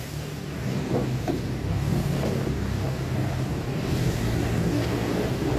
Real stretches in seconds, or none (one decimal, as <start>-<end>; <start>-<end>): none